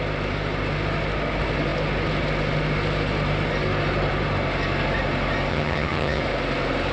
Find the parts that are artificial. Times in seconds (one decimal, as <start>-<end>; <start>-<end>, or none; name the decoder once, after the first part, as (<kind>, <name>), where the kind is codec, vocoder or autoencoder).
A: 5.5-6.2 (vocoder, HiFi-GAN)

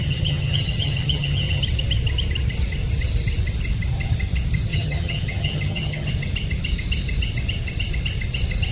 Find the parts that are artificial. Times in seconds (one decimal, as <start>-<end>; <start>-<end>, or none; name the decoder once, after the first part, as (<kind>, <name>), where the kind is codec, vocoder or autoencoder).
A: 0.0-1.6 (vocoder, HiFi-GAN); 4.7-6.1

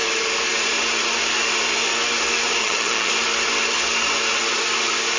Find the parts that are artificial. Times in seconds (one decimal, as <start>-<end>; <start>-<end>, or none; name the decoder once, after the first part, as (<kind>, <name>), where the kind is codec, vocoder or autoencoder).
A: 2.6-3.1 (vocoder, HiFi-GAN)

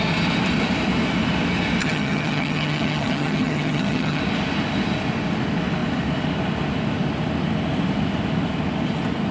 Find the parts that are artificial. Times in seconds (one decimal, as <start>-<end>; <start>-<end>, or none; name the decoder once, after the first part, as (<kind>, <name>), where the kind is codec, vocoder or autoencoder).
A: 1.8-4.2 (vocoder, HiFi-GAN)

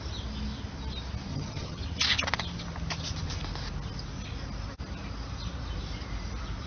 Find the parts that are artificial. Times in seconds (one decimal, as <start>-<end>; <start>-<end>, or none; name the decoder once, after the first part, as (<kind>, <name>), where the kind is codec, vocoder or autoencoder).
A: 1.3-1.8 (vocoder, HiFi-GAN)

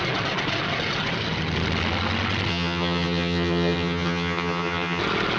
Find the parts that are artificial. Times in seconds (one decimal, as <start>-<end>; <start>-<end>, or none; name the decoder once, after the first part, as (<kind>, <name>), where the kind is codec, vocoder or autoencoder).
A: 2.5-5.0 (vocoder, HiFi-GAN)

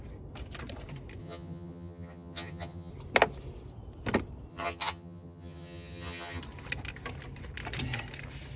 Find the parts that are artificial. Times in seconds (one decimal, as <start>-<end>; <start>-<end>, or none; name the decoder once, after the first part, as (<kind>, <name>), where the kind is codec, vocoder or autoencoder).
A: 1.2-2.9 (vocoder, HiFi-GAN); 4.5-6.4